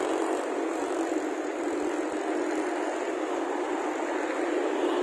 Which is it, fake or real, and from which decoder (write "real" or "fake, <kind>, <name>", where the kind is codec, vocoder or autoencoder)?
real